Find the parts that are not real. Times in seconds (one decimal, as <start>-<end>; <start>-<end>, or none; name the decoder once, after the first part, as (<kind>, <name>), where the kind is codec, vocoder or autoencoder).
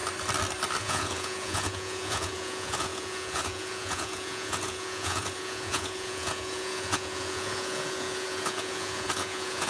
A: 0.8-9.7 (vocoder, Vocos)